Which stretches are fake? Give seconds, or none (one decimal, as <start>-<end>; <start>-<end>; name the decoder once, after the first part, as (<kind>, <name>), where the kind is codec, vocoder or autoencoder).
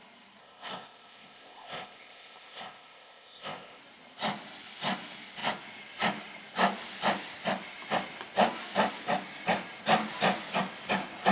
0.4-3.8 (codec, ZipCodec)